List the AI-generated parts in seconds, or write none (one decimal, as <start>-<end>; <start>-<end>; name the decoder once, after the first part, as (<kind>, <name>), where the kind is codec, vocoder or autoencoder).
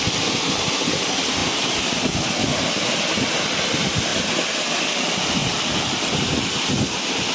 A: 1.4-1.9 (vocoder, BigVGAN v2)